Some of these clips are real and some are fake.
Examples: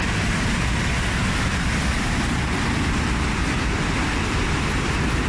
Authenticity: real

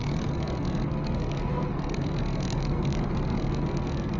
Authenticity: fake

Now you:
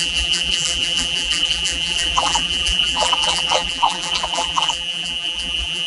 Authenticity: fake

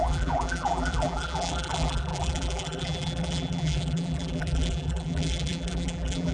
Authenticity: fake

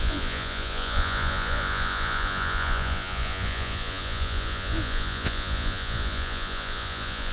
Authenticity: fake